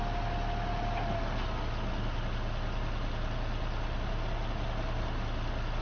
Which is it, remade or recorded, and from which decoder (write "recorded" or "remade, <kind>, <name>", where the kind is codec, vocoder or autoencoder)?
recorded